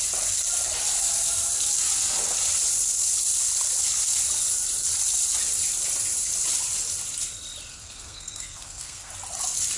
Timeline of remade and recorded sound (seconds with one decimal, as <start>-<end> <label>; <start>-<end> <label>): 0.0-7.8 recorded; 7.8-9.1 remade; 9.1-9.8 recorded